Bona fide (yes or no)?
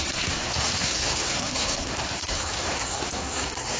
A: no